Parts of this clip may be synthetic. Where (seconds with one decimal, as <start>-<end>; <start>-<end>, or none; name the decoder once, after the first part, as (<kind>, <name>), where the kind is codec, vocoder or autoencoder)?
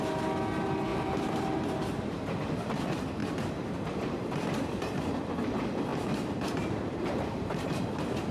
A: 0.9-2.4 (vocoder, BigVGAN v2); 3.2-5.1; 5.9-7.9